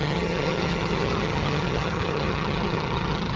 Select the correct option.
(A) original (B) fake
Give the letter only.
B